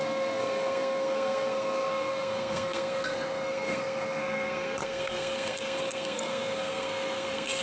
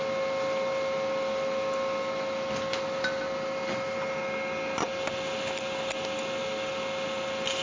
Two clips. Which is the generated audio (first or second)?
first